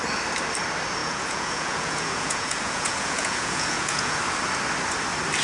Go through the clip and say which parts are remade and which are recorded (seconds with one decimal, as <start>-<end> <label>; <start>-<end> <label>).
0.0-1.0 recorded; 1.0-4.2 remade; 4.2-5.4 recorded